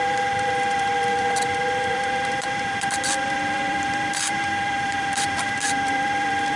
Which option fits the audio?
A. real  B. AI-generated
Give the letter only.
B